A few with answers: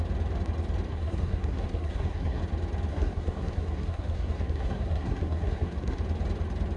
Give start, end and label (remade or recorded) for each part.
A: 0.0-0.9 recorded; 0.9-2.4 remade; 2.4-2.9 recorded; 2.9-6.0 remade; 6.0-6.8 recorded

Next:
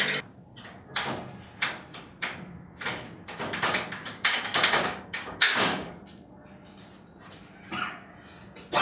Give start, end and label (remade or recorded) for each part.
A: 0.0-4.0 recorded; 4.0-5.9 remade; 5.9-8.8 recorded

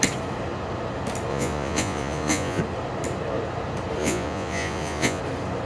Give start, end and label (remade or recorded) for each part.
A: 0.0-1.3 recorded; 1.3-2.6 remade; 2.6-4.0 recorded; 4.0-5.2 remade; 5.2-5.7 recorded

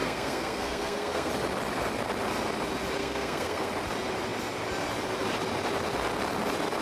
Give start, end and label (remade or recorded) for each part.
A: 0.0-1.3 remade; 1.3-3.0 recorded; 3.0-3.7 remade; 3.7-6.8 recorded

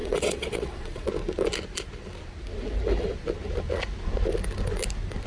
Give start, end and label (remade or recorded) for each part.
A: 0.0-1.1 remade; 1.1-5.3 recorded

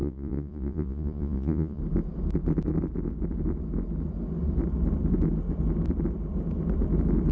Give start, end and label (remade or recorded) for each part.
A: 0.0-1.8 remade; 1.8-7.3 recorded

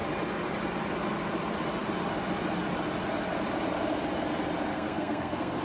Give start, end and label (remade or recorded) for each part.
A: 0.0-4.7 recorded; 4.7-5.6 remade

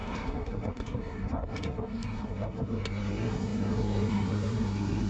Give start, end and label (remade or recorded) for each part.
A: 0.0-5.1 remade